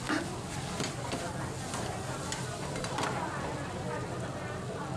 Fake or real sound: real